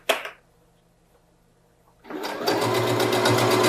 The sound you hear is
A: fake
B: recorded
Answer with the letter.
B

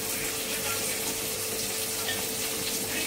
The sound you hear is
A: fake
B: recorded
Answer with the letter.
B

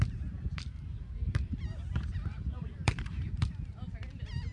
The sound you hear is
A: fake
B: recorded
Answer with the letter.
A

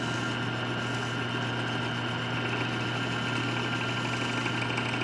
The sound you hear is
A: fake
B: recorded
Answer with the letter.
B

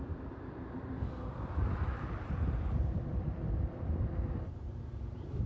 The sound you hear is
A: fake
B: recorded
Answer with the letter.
A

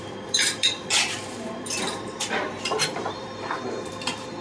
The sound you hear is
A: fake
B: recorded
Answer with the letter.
A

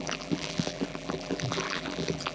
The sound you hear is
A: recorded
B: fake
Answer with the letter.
B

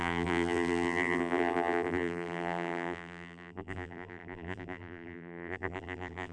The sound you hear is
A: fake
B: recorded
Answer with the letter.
A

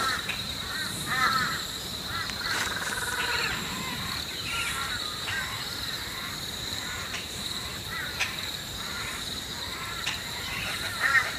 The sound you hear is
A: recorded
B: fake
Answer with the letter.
B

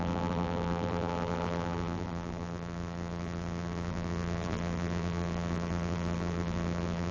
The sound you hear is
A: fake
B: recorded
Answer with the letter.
A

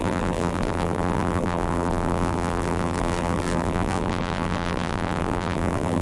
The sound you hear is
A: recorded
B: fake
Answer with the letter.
B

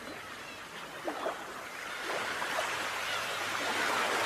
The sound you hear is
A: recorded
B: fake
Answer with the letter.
B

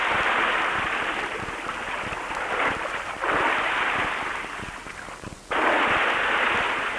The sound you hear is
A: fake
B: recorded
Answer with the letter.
B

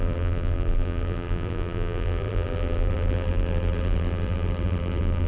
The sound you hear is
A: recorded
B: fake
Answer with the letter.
B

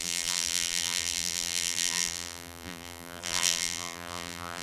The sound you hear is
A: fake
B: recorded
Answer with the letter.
A